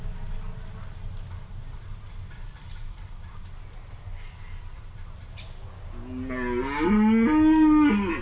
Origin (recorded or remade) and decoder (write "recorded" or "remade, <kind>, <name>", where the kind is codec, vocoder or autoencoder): recorded